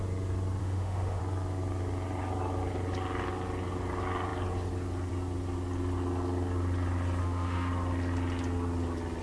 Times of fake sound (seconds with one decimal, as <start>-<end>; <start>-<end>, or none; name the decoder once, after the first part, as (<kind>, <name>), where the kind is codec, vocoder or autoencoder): 0.6-1.2 (autoencoder, DAC-VAE); 7.2-7.7